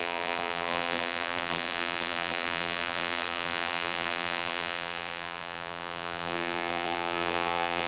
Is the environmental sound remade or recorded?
remade